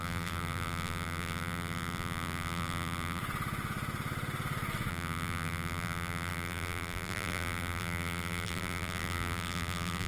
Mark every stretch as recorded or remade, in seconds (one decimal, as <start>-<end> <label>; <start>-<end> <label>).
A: 0.0-3.2 remade; 3.2-4.9 recorded; 4.9-10.1 remade